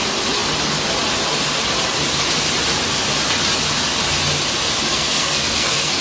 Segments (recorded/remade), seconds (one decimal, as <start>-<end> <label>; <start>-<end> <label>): 0.0-4.9 recorded; 4.9-6.0 remade